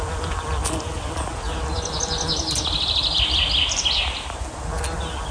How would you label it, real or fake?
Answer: real